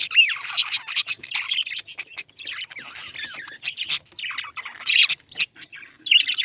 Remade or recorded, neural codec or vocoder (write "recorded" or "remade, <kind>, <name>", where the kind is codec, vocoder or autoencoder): recorded